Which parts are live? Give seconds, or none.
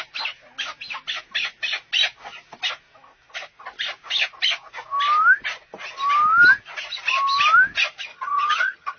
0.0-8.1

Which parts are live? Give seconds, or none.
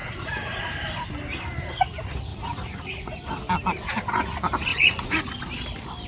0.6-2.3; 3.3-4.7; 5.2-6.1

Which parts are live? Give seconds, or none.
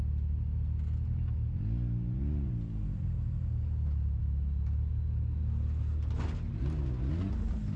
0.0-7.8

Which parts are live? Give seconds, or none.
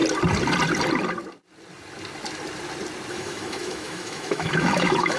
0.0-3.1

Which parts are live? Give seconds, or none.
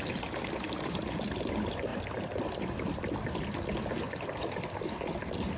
0.0-5.6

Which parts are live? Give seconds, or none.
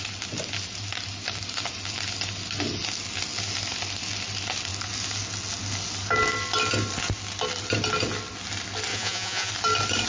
0.0-8.9; 9.5-10.1